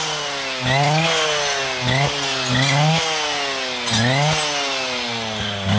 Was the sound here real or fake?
real